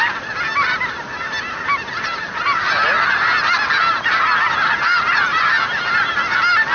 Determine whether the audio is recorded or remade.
recorded